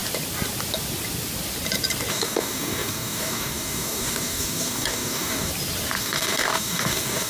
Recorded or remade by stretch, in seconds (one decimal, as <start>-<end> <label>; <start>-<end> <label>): 0.0-2.1 recorded; 2.1-5.5 remade; 5.5-6.0 recorded; 6.0-7.3 remade